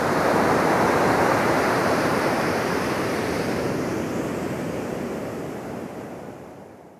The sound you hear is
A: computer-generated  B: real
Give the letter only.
A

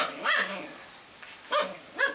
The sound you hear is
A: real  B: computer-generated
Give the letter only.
A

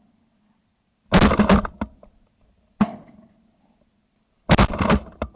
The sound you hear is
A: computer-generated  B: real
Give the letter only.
A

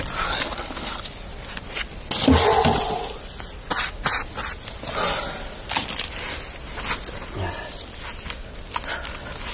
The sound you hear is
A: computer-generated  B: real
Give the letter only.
B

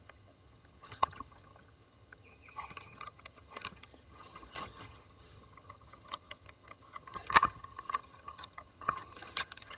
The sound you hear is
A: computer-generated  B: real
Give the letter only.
A